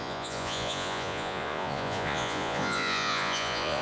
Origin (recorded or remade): remade